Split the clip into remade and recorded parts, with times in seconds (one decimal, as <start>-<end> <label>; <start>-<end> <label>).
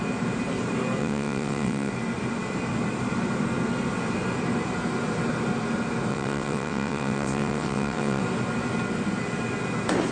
0.0-1.0 recorded; 1.0-1.9 remade; 1.9-6.1 recorded; 6.1-8.2 remade; 8.2-10.1 recorded